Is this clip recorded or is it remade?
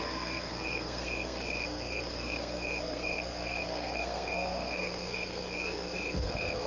remade